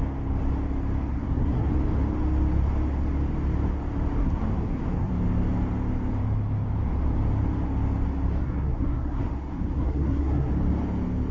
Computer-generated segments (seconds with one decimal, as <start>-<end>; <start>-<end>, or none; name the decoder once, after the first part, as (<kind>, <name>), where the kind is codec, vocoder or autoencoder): 1.1-1.7 (codec, SNAC); 4.2-5.1; 8.4-10.5